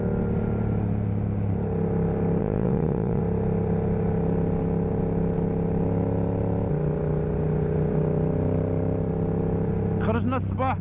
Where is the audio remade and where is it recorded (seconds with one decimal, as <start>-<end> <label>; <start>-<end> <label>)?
0.0-2.4 recorded; 2.4-3.2 remade; 3.2-10.8 recorded